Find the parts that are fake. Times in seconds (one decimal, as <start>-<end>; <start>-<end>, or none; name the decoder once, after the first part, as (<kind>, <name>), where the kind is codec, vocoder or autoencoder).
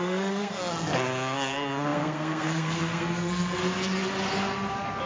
0.0-3.6 (codec, SNAC)